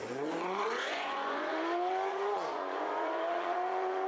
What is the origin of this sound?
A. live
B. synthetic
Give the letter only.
B